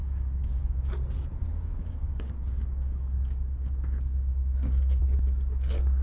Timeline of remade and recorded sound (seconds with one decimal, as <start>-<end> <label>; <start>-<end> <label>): 0.0-0.9 remade; 0.9-1.4 recorded; 1.4-5.0 remade; 5.0-6.0 recorded